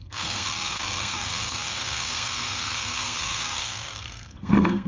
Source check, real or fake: fake